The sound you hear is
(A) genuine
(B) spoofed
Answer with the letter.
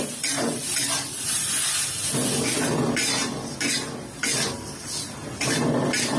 A